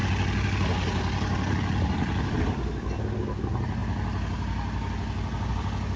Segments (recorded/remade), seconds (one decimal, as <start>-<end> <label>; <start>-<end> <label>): 0.0-6.0 recorded